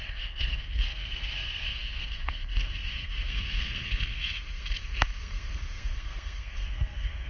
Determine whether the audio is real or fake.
fake